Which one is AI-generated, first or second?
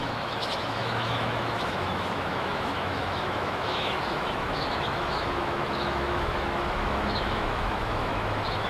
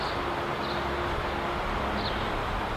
first